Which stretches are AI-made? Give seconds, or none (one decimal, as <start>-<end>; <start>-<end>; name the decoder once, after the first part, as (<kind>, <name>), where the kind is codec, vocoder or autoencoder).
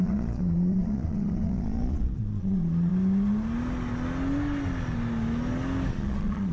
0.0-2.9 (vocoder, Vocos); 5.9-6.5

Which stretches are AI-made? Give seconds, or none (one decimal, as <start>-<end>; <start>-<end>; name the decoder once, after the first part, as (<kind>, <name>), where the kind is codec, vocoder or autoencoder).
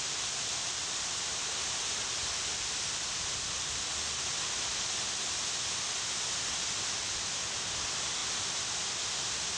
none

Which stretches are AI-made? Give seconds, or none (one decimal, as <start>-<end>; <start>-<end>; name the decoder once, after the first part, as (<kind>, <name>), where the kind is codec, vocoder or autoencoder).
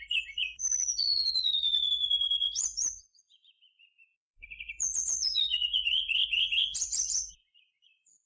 0.0-8.3 (vocoder, Vocos)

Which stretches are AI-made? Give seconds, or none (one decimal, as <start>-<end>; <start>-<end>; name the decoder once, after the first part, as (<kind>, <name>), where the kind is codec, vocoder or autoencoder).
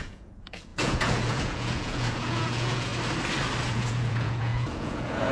0.0-2.9 (vocoder, Vocos); 3.7-5.3